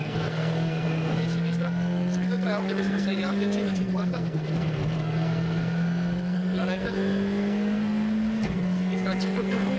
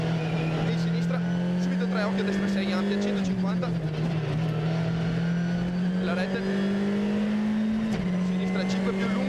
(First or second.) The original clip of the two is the second